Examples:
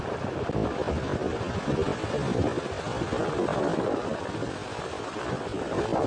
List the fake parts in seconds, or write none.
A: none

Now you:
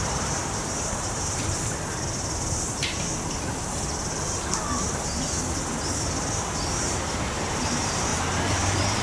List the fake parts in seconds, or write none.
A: 0.0-1.4 (vocoder, BigVGAN v2); 6.7-8.1

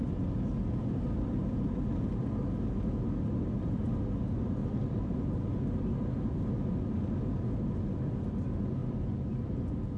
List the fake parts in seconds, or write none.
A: 4.6-5.2 (vocoder, BigVGAN v2); 8.8-10.0